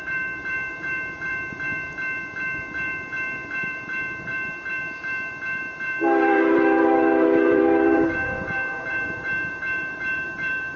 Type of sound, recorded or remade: remade